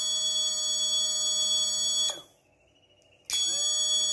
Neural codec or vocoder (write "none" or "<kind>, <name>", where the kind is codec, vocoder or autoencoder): none